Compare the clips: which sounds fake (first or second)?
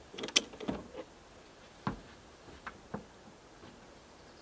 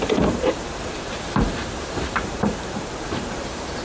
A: second